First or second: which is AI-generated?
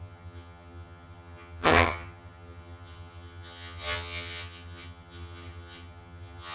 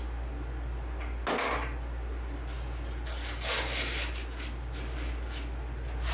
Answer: first